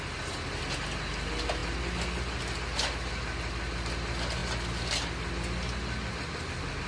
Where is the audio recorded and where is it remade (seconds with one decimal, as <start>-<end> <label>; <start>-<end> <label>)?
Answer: 0.0-6.9 recorded